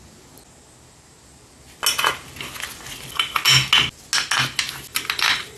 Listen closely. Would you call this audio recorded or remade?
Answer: recorded